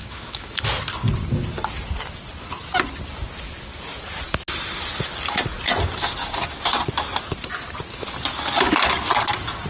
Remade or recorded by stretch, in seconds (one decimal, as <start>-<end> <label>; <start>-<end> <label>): 0.0-0.6 remade; 0.6-9.7 recorded

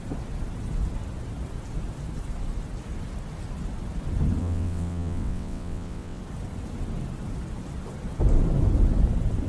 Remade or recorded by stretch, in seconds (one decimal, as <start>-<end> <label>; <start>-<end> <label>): 0.0-4.4 recorded; 4.4-6.2 remade; 6.2-9.5 recorded